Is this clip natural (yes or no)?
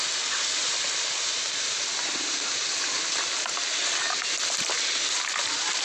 yes